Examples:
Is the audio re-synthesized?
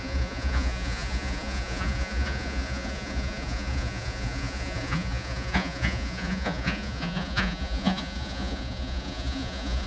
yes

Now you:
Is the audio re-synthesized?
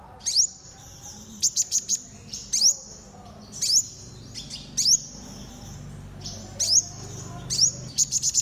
no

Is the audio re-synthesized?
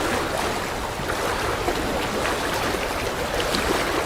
no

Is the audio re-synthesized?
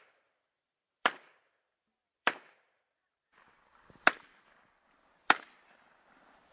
yes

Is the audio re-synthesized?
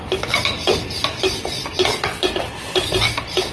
no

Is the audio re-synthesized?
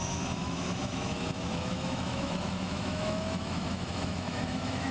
yes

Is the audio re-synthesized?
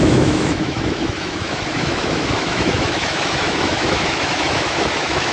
yes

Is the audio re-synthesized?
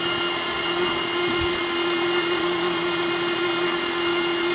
yes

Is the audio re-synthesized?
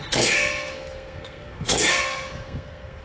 yes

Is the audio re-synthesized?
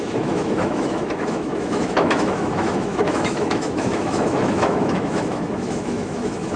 yes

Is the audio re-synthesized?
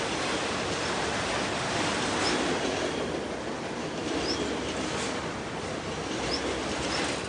no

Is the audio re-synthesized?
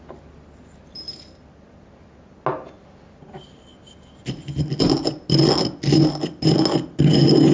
no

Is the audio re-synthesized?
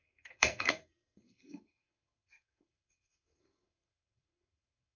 yes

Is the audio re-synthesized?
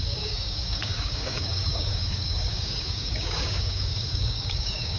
yes